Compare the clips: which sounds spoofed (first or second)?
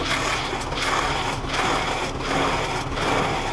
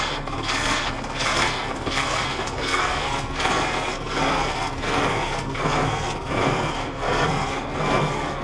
second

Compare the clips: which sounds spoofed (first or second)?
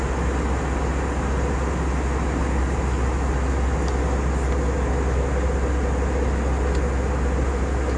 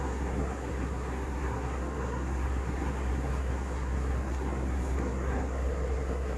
second